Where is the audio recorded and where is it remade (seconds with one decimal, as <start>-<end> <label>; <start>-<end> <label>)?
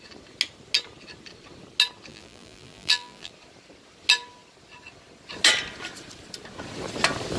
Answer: 0.0-2.1 recorded; 2.1-3.3 remade; 3.3-7.4 recorded